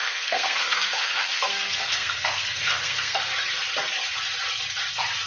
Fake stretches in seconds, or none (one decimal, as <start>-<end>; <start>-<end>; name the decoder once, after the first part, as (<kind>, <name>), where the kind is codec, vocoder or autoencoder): 0.0-3.2 (codec, SNAC)